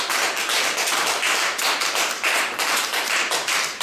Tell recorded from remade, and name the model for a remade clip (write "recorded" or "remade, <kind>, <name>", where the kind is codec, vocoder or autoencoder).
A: remade, vocoder, BigVGAN v2